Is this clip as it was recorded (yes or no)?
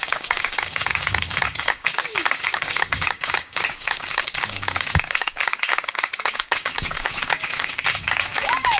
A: no